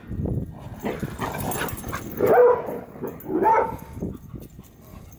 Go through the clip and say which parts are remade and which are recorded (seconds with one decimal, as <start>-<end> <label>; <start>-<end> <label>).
0.0-5.2 recorded